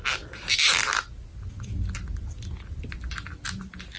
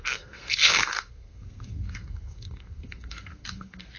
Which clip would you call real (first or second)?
first